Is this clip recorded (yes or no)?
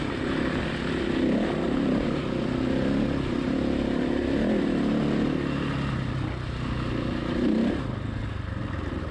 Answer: yes